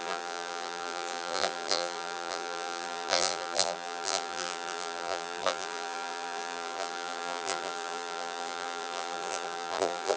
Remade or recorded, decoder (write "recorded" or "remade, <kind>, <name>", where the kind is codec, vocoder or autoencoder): remade, vocoder, BigVGAN v2